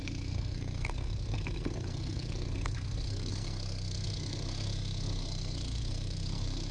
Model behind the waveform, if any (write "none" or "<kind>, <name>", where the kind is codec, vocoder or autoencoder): codec, SNAC